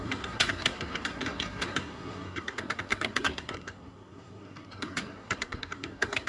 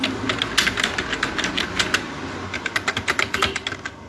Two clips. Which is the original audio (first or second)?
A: second